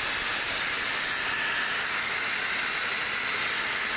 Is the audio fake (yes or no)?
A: no